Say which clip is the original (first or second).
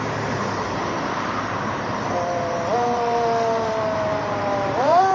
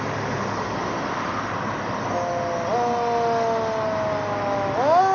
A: second